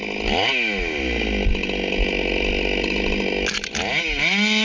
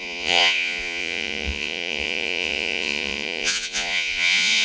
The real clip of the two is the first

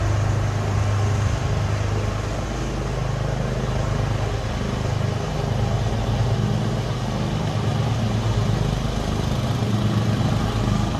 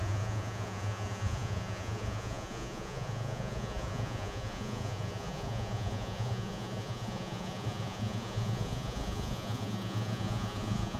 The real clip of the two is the first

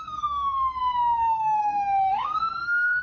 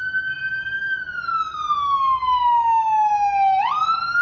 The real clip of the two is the second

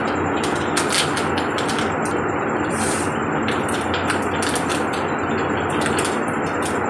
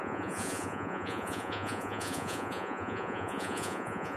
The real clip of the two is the first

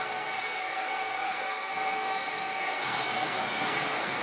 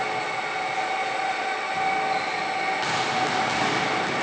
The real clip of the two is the second